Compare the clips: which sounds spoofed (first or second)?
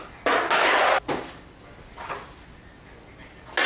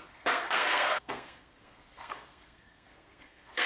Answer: second